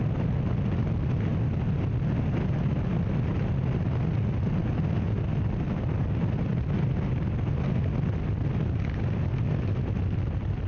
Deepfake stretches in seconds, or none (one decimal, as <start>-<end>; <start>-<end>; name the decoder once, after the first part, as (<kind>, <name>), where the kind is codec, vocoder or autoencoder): none